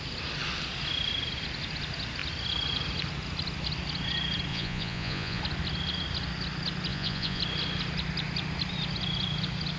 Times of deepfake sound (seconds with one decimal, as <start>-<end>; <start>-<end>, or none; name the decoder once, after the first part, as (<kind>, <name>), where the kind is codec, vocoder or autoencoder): 4.5-5.4 (vocoder, Vocos); 6.9-7.4